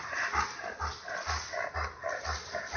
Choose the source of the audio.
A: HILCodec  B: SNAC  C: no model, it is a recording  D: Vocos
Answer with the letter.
C